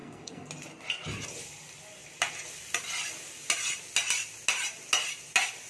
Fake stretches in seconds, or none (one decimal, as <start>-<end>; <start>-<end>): 0.0-0.5